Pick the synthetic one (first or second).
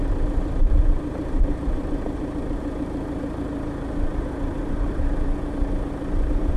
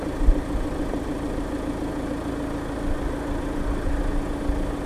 first